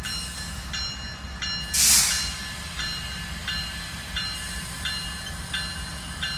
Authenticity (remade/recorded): recorded